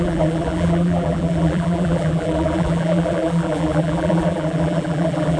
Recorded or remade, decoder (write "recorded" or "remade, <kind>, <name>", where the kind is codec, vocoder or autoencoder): remade, vocoder, BigVGAN v2